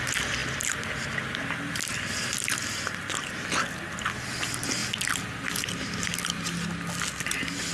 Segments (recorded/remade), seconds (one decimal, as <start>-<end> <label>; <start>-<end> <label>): 0.0-7.7 recorded